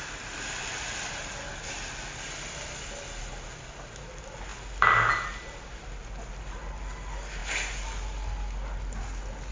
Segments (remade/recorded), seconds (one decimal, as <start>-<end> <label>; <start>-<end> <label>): 0.0-9.5 recorded